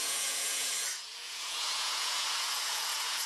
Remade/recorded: remade